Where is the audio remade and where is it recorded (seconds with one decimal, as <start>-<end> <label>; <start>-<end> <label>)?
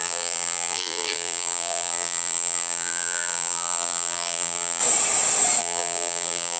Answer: 0.0-4.8 remade; 4.8-5.6 recorded; 5.6-6.6 remade